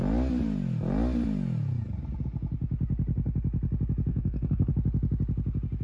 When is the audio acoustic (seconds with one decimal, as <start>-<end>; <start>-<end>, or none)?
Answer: 0.0-4.1; 4.7-5.8